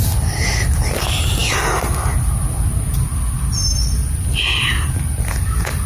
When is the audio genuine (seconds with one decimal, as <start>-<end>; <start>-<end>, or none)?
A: 0.0-5.9